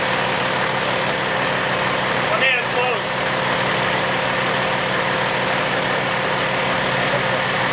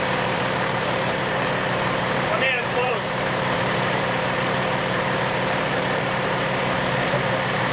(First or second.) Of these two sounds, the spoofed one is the second